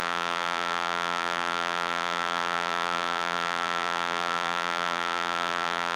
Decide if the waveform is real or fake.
fake